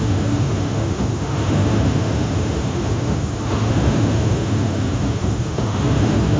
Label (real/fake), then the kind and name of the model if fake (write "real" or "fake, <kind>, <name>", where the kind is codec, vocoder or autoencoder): fake, autoencoder, DAC-VAE